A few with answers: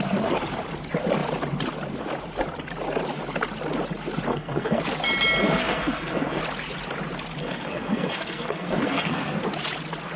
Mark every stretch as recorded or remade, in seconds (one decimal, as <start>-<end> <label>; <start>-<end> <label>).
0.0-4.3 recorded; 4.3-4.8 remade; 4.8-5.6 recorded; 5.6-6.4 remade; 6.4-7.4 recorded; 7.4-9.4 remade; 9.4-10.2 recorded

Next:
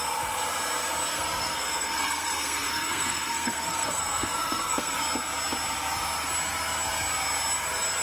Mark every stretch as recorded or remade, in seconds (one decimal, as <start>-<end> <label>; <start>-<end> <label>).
0.0-1.1 recorded; 1.1-4.9 remade; 4.9-8.0 recorded

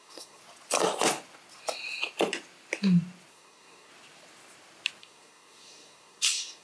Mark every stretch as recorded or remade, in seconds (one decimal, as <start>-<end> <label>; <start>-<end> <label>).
0.0-0.4 remade; 0.4-3.3 recorded; 3.3-3.9 remade; 3.9-5.0 recorded; 5.0-6.6 remade

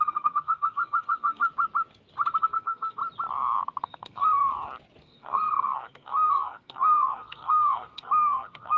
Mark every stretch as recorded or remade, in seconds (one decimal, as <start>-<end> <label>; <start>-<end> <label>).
0.0-1.5 remade; 1.5-2.4 recorded; 2.4-3.0 remade; 3.0-3.8 recorded; 3.8-4.5 remade; 4.5-5.0 recorded; 5.0-8.8 remade

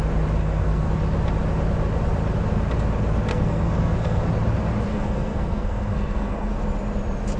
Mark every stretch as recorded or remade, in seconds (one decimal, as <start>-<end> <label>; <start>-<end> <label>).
0.0-0.4 recorded; 0.4-0.9 remade; 0.9-3.3 recorded; 3.3-4.3 remade; 4.3-4.9 recorded; 4.9-6.5 remade; 6.5-7.4 recorded

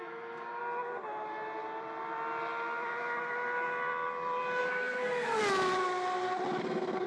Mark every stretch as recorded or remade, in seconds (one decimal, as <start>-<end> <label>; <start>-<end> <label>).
0.0-0.6 remade; 0.6-4.6 recorded; 4.6-5.4 remade; 5.4-6.6 recorded; 6.6-7.1 remade